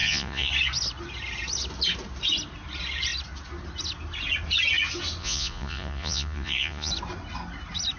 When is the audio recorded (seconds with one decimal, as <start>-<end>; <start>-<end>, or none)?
0.5-5.2; 6.9-8.0